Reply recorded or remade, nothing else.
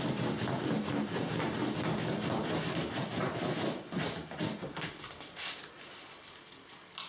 recorded